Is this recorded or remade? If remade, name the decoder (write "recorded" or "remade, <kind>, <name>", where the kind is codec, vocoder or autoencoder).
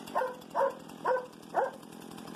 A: recorded